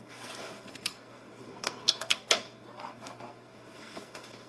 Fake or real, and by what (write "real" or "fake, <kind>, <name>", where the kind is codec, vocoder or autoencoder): fake, codec, SNAC